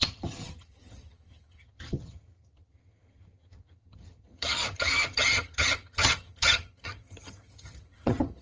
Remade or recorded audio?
remade